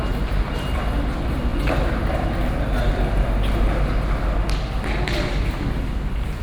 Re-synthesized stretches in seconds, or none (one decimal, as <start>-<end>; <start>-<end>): none

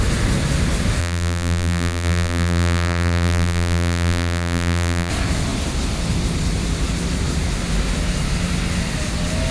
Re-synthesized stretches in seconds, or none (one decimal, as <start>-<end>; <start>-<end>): 1.0-5.1